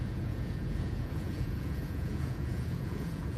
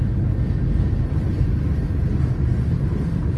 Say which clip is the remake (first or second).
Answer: first